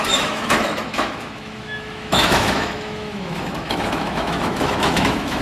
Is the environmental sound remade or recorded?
remade